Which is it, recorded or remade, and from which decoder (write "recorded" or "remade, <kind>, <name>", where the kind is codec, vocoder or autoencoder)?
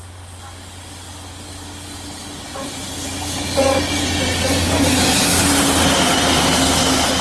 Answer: recorded